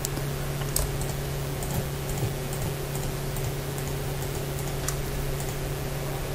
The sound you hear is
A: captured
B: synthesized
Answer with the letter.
A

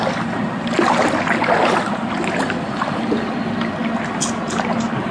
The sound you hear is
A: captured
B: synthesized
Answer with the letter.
A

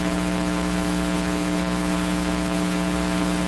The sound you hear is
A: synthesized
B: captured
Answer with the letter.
A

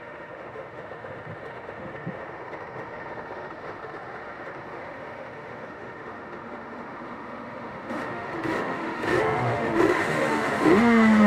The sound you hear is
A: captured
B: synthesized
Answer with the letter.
B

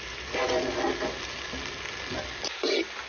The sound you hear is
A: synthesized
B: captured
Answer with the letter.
B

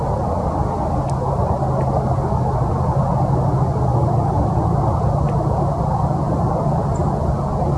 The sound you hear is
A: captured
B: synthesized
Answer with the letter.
A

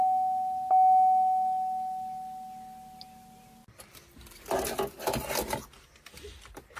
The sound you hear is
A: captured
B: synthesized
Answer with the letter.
A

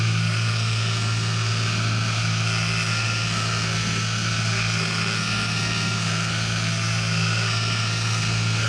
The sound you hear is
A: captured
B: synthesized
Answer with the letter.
B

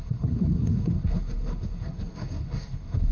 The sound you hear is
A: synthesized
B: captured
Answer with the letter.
A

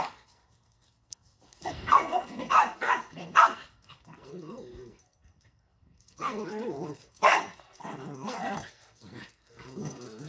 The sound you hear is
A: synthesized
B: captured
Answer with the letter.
A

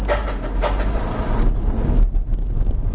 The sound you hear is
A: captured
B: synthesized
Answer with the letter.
A